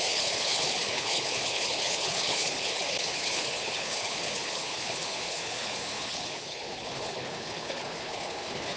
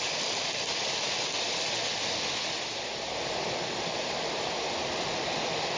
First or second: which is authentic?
second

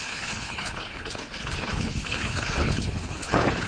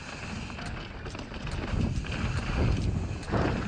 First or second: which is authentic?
second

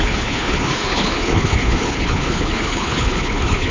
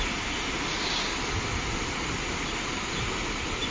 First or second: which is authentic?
second